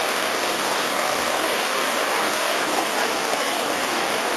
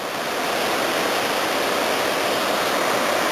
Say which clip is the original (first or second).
second